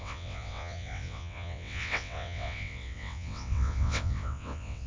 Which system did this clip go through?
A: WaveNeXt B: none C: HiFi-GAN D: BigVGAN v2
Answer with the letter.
A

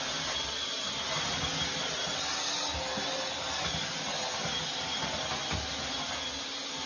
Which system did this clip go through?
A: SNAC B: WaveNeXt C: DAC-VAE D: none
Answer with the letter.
D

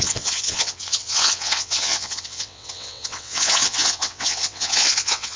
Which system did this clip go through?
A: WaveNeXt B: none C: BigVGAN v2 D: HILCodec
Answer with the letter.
A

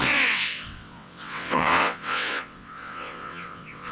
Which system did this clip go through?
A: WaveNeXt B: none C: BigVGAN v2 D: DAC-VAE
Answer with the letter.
A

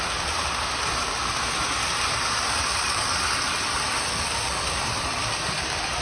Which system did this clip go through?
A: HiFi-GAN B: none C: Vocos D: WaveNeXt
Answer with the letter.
B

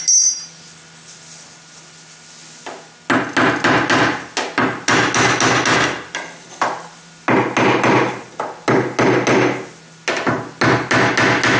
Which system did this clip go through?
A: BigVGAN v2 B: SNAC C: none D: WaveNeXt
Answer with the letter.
C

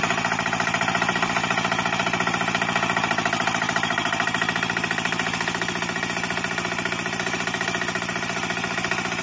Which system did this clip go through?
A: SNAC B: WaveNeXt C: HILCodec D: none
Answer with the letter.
D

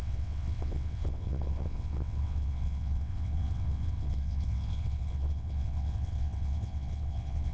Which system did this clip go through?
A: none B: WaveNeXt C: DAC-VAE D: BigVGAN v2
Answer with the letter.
B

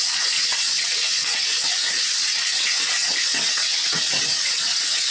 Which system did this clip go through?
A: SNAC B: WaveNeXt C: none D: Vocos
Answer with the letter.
B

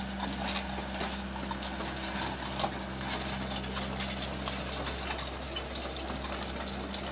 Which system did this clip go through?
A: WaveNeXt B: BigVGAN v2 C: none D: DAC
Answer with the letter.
C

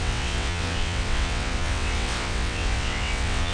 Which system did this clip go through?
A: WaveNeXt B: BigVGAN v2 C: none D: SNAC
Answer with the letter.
A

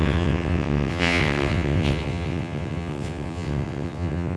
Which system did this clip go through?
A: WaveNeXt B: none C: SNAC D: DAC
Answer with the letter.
A